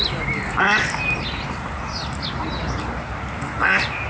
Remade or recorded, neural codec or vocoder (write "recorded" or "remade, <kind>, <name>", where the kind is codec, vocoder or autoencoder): recorded